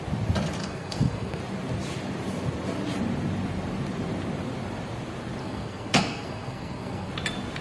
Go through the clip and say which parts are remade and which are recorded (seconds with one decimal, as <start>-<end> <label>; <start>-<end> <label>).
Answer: 0.0-0.6 recorded; 0.6-1.4 remade; 1.4-5.4 recorded; 5.4-7.1 remade; 7.1-7.6 recorded